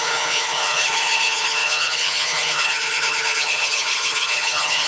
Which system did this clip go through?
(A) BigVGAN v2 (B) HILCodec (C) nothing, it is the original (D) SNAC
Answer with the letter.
B